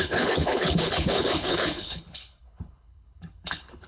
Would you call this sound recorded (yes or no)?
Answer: no